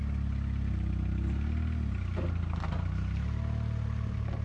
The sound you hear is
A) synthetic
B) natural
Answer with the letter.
B